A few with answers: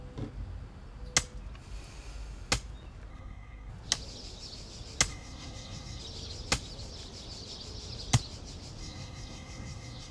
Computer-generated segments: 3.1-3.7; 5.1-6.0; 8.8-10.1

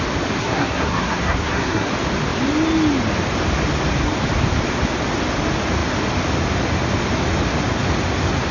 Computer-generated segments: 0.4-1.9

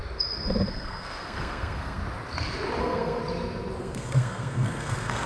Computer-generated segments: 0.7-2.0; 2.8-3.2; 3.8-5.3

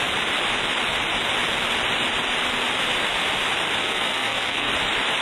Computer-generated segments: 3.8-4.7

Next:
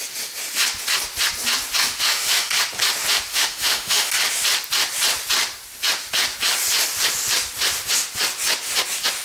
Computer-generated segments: 1.8-2.5; 3.3-4.1

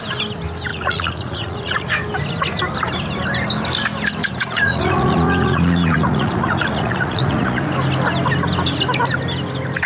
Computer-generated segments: 0.7-1.9; 4.2-7.7

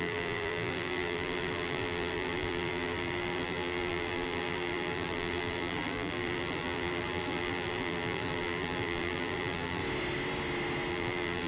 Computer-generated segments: 0.0-9.8; 10.9-11.5

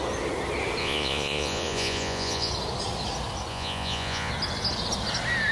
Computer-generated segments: 0.8-2.5; 3.5-4.3